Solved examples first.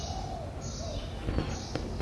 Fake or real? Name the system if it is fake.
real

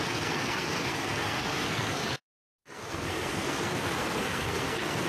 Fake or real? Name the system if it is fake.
fake, codec, SNAC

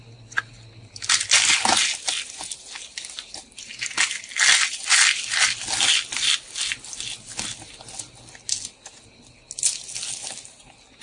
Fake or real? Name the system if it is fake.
real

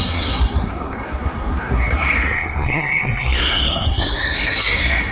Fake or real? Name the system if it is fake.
fake, codec, SNAC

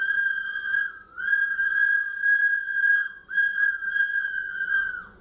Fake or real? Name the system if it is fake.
fake, vocoder, Vocos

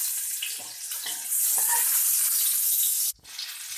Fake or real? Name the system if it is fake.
real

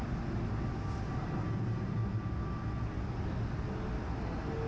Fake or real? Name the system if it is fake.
real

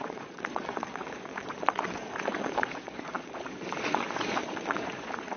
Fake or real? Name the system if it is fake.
fake, vocoder, Vocos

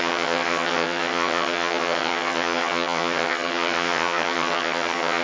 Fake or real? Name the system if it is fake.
fake, vocoder, HiFi-GAN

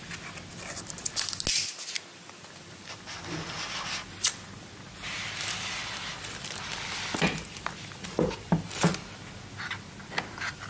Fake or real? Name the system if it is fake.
real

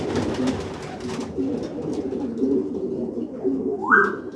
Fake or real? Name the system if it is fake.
real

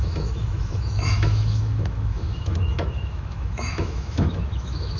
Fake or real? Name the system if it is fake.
fake, autoencoder, DAC-VAE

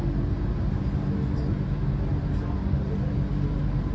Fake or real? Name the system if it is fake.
real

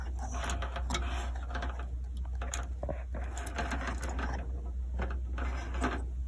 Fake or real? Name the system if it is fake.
real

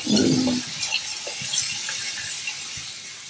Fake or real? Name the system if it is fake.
real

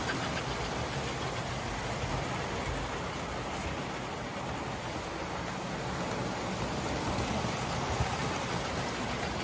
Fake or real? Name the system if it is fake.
real